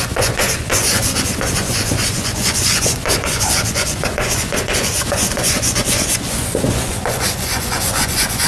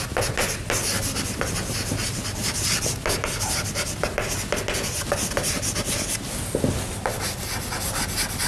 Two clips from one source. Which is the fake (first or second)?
first